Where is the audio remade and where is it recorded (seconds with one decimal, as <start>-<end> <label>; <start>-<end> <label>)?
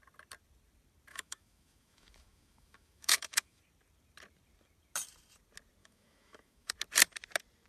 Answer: 0.0-1.1 recorded; 1.1-3.6 remade; 3.6-5.8 recorded; 5.8-6.7 remade; 6.7-7.7 recorded